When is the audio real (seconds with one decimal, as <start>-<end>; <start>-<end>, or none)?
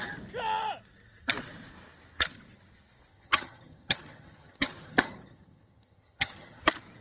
0.0-3.1; 6.6-7.0